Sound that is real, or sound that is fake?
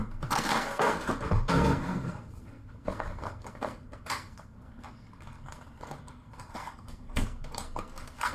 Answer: fake